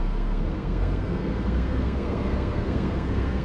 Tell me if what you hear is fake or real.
fake